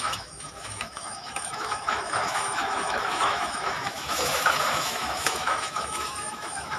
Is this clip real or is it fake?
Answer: fake